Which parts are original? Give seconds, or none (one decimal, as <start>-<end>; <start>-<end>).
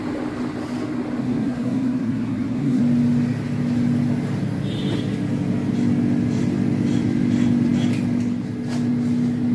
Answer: 0.0-1.2; 2.8-9.5